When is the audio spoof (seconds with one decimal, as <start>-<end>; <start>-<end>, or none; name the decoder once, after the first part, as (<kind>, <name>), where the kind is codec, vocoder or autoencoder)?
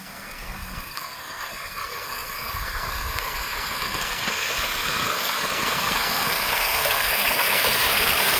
0.0-8.4 (codec, SNAC)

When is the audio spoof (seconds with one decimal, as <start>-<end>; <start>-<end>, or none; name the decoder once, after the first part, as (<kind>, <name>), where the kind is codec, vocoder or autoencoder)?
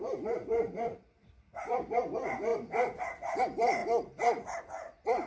none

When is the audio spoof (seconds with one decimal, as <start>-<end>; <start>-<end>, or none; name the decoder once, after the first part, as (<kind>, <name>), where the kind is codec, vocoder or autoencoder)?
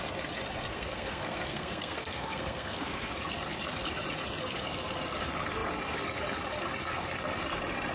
0.7-3.1 (codec, SNAC)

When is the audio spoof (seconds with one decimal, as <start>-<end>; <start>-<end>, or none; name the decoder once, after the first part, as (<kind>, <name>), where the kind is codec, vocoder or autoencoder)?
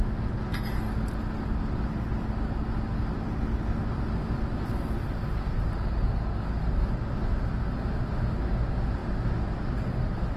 none